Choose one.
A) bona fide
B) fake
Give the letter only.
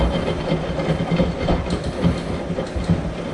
A